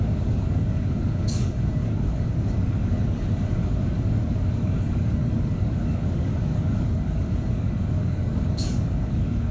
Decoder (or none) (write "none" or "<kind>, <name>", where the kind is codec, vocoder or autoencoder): codec, DAC